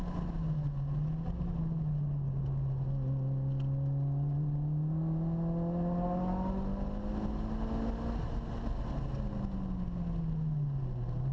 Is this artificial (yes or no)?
no